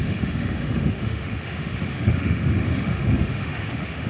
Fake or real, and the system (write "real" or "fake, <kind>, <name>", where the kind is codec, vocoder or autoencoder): fake, autoencoder, DAC-VAE